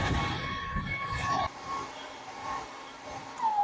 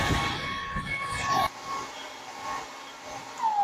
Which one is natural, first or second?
second